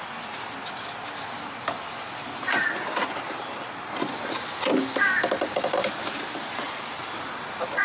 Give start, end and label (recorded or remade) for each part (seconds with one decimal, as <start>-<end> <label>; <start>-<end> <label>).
0.0-7.8 recorded